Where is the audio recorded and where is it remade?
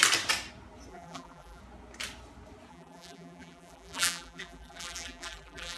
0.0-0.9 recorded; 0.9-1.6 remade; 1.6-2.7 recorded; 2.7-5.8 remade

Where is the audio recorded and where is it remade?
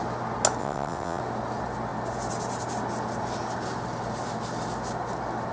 0.0-0.6 recorded; 0.6-1.2 remade; 1.2-5.5 recorded